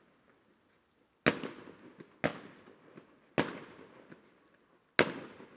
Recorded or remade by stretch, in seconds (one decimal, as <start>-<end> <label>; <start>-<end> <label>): 0.0-5.6 recorded